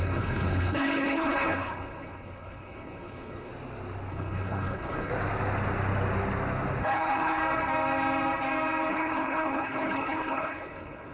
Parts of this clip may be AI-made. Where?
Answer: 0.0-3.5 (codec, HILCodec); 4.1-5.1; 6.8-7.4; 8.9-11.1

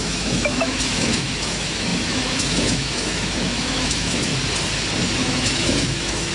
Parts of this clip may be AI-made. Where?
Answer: 0.0-4.3 (autoencoder, DAC-VAE); 5.2-6.3